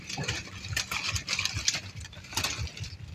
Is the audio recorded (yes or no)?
yes